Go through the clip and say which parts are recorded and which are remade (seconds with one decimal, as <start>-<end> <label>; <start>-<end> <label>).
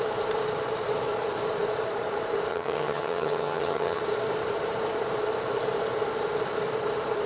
0.0-2.5 recorded; 2.5-4.0 remade; 4.0-7.3 recorded